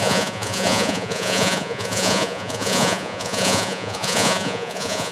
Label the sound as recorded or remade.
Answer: remade